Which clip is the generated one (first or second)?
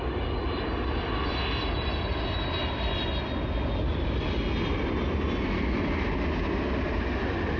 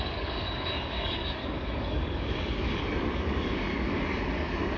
second